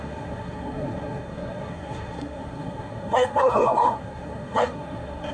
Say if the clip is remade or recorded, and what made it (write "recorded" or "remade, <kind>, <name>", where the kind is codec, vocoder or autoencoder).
remade, codec, SNAC